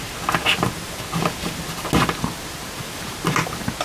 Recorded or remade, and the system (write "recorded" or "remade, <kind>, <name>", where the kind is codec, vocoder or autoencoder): recorded